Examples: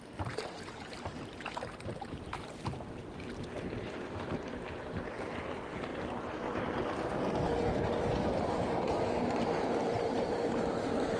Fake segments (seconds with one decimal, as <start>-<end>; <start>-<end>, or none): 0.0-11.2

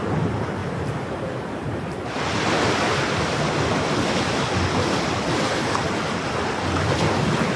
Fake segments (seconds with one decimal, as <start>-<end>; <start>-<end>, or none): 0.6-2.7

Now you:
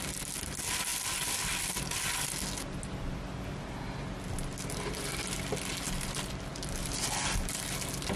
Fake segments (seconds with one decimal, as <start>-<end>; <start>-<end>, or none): none

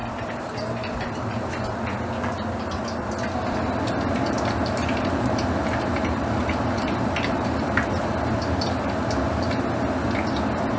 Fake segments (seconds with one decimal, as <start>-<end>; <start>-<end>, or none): 0.0-1.5; 4.8-8.9